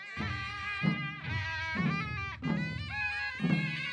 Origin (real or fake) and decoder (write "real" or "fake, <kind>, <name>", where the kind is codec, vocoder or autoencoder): real